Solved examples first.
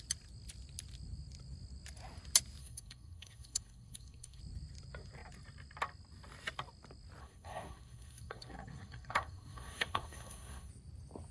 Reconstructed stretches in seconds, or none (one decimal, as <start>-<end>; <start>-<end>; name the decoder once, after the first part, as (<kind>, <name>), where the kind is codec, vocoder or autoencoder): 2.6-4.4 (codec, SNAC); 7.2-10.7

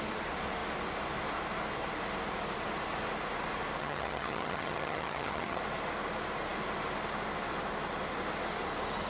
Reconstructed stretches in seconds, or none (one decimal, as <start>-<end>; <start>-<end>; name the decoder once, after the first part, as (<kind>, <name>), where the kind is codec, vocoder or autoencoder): 3.8-5.6 (vocoder, HiFi-GAN)

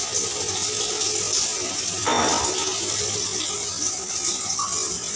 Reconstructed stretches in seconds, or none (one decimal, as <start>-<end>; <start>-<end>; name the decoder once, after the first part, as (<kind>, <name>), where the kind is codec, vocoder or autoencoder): none

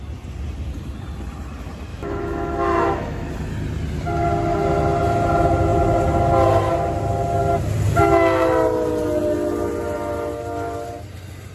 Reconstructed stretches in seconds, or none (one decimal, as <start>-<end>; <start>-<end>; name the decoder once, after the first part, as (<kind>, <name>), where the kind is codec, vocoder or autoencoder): 1.9-3.3 (autoencoder, DAC-VAE)